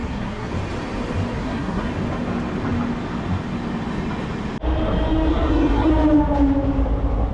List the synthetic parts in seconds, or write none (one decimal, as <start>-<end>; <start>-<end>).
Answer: 0.0-0.5; 1.3-1.9; 5.3-5.9